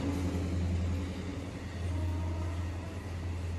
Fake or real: real